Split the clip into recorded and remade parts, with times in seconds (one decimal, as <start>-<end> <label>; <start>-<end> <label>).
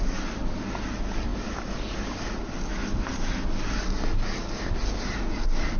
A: 0.0-5.8 recorded